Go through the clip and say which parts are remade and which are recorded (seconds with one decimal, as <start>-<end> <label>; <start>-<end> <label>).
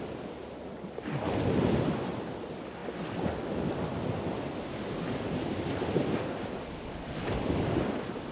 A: 0.0-8.3 recorded